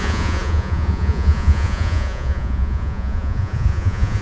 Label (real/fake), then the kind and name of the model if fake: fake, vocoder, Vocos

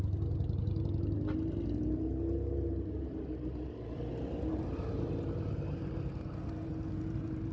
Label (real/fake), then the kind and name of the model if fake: real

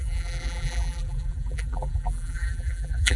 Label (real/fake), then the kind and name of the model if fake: fake, vocoder, BigVGAN v2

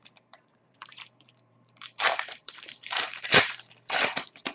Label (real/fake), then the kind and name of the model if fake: fake, vocoder, BigVGAN v2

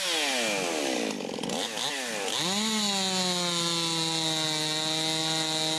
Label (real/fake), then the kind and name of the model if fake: real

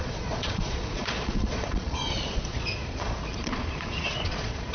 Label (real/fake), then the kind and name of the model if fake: fake, vocoder, Vocos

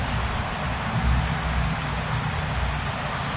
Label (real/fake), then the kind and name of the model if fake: real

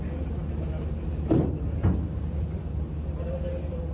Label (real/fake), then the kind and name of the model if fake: real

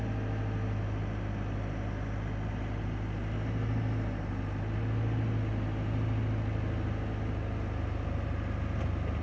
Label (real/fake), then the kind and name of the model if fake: real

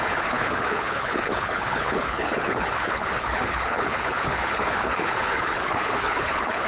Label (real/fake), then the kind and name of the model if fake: fake, codec, HILCodec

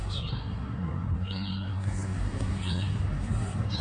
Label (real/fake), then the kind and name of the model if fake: fake, codec, SNAC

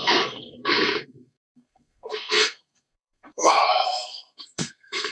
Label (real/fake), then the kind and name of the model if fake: fake, codec, SNAC